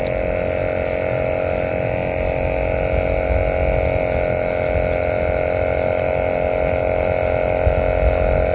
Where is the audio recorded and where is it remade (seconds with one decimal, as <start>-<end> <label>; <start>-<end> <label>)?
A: 0.0-8.5 recorded